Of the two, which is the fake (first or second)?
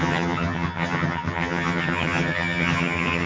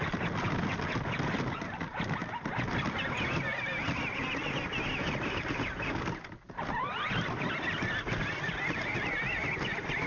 first